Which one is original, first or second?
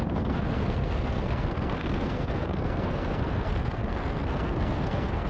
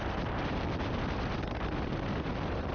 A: second